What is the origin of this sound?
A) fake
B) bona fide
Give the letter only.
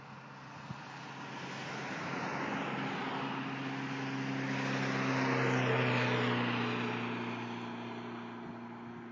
B